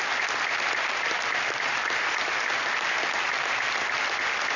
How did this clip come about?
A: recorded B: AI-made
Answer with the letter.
A